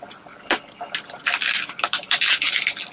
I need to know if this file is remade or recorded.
recorded